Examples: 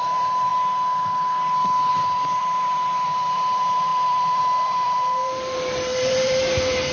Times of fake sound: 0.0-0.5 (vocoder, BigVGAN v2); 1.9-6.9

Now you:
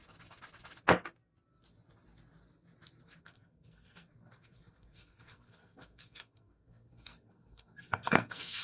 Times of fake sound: 3.2-8.6 (codec, SNAC)

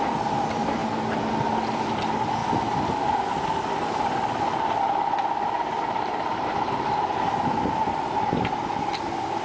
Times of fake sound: 0.0-0.8 (vocoder, BigVGAN v2); 1.6-2.4; 3.6-9.4

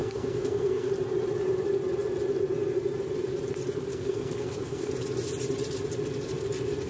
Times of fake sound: 0.0-0.9 (codec, SNAC); 3.9-4.9

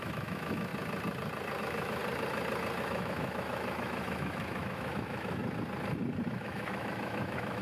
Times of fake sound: 0.0-0.7 (autoencoder, DAC-VAE); 1.6-2.0; 2.8-5.4; 6.3-7.6

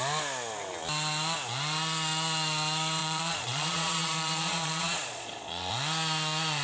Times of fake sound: 3.0-5.7 (vocoder, Vocos)

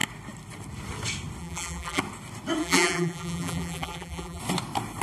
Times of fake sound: 1.4-2.0 (vocoder, BigVGAN v2); 2.6-4.4

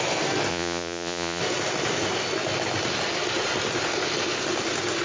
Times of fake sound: 0.5-1.4 (vocoder, Vocos)